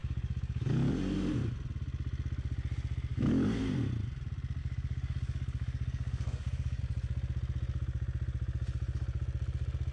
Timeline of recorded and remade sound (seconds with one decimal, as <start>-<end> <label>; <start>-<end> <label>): 0.0-0.9 remade; 0.9-3.1 recorded; 3.1-3.6 remade; 3.6-4.6 recorded; 4.6-6.8 remade; 6.8-9.9 recorded